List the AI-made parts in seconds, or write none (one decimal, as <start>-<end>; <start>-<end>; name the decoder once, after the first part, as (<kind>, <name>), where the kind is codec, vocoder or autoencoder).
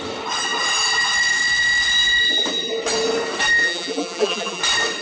3.6-4.6 (vocoder, BigVGAN v2)